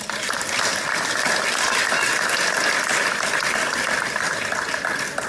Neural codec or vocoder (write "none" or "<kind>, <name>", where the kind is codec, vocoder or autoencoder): none